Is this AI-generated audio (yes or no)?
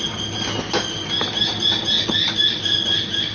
no